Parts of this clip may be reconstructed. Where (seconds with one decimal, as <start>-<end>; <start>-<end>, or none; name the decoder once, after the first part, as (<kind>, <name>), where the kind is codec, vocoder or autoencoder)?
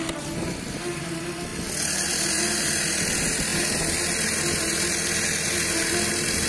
none